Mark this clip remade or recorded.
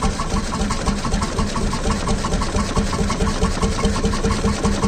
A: recorded